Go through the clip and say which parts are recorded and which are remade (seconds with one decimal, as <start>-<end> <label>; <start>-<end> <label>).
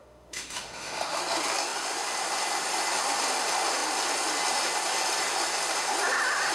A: 0.0-1.2 remade; 1.2-6.5 recorded